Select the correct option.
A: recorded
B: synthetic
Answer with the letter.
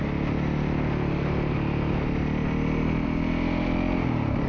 A